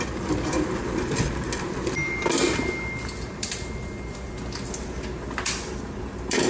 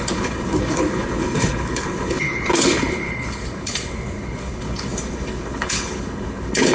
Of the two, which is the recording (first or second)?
first